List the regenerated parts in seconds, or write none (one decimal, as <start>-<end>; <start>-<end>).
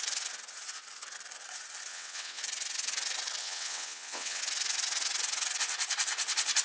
1.9-2.4; 3.4-4.4